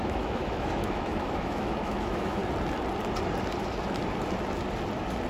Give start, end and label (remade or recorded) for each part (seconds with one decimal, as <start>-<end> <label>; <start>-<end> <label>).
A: 0.0-2.4 remade; 2.4-5.3 recorded